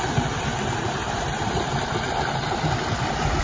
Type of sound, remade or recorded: recorded